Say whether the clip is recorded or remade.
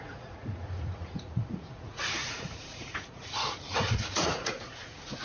remade